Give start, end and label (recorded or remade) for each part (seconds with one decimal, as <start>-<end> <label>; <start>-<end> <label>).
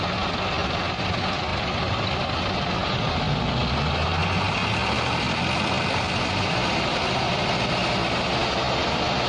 0.0-0.6 recorded; 0.6-1.1 remade; 1.1-4.6 recorded; 4.6-8.2 remade; 8.2-9.3 recorded